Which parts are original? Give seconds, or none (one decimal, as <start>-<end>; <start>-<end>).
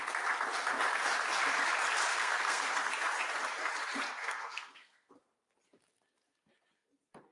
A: 0.0-2.1; 2.6-4.2; 5.1-7.3